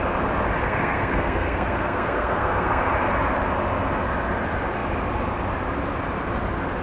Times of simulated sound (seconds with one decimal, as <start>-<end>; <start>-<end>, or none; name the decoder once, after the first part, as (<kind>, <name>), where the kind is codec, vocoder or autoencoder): 0.6-2.9 (codec, SNAC)